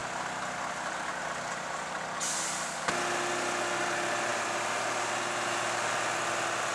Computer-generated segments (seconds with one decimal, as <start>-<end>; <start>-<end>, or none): none